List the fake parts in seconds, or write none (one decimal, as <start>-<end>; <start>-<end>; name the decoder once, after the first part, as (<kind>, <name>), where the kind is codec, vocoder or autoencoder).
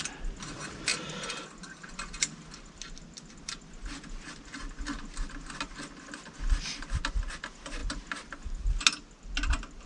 none